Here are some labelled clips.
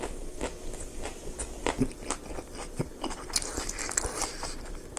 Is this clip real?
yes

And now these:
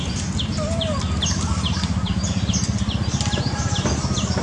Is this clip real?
yes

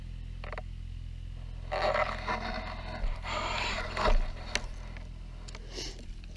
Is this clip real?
yes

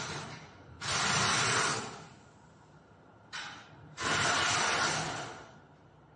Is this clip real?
yes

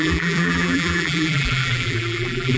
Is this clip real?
no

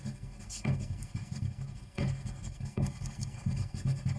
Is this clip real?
no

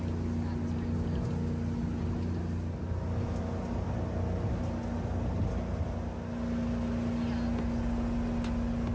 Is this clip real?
yes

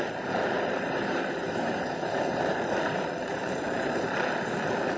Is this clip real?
no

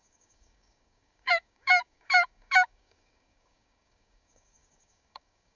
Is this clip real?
no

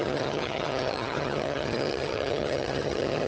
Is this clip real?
no